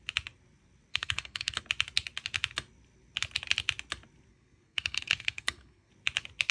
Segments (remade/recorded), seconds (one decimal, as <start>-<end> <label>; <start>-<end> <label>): 0.0-0.9 recorded; 0.9-1.6 remade; 1.6-4.3 recorded; 4.3-5.9 remade; 5.9-6.5 recorded